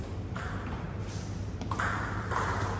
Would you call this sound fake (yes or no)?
yes